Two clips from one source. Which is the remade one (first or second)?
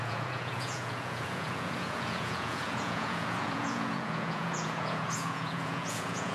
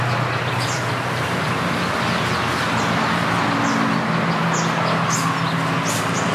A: first